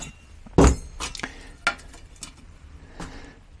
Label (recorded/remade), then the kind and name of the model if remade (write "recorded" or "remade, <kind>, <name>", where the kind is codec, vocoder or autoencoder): recorded